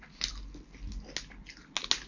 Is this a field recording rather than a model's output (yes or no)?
yes